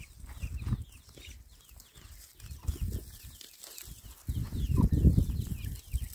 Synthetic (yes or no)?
no